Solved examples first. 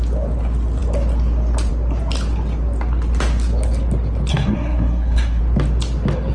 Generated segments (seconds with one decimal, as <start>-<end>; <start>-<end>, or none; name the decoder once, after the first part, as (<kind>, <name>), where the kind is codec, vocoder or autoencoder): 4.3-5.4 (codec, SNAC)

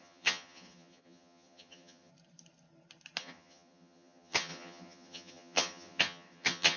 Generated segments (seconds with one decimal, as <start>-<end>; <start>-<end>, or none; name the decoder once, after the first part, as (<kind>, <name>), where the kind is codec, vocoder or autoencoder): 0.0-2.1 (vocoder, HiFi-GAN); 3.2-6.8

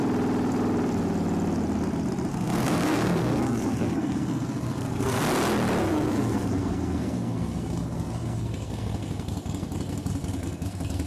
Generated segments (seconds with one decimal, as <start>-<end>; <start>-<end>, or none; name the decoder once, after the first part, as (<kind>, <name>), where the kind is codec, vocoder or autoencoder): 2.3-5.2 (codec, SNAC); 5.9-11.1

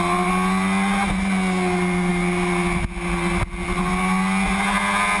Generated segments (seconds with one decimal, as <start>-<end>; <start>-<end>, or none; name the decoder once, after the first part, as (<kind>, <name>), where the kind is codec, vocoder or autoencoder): none